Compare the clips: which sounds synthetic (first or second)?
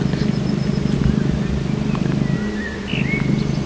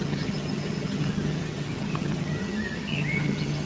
second